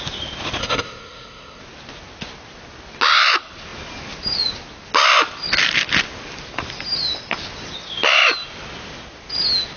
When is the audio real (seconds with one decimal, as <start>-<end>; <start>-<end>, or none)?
0.0-0.6; 1.6-9.8